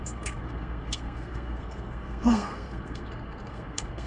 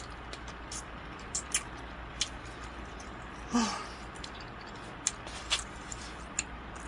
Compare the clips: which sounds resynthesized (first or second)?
first